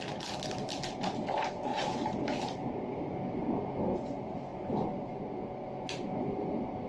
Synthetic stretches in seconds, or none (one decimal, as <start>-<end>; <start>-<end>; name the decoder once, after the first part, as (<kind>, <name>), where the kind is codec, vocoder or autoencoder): none